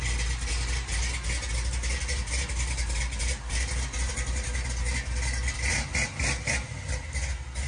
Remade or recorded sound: recorded